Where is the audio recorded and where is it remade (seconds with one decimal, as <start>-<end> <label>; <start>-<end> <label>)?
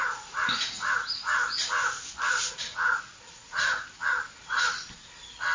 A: 0.0-1.6 remade; 1.6-2.3 recorded; 2.3-3.9 remade; 3.9-5.5 recorded